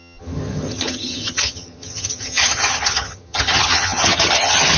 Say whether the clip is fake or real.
fake